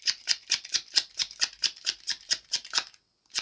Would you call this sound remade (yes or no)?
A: no